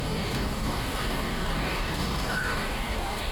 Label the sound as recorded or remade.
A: remade